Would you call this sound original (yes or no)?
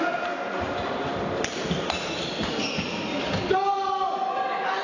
yes